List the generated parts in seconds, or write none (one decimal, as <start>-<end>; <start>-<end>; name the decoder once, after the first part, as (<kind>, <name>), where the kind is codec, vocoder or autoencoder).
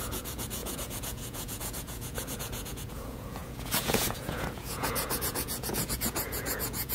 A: 0.0-6.9 (vocoder, Vocos)